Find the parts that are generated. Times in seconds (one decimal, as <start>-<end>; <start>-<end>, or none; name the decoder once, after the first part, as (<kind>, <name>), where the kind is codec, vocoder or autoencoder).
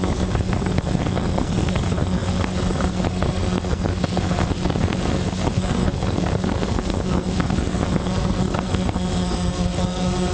0.0-10.3 (codec, SNAC)